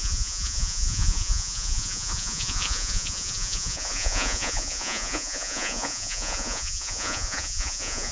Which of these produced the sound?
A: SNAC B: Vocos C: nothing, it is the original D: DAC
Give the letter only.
B